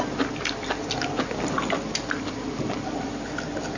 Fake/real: real